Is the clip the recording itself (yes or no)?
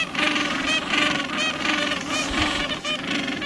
yes